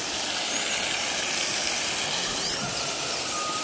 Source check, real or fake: real